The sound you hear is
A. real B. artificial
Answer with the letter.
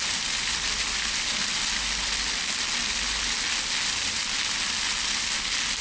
A